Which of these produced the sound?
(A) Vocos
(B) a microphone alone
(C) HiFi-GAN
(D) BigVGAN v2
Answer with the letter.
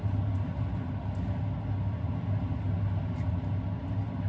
B